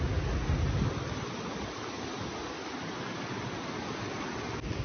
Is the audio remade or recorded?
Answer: recorded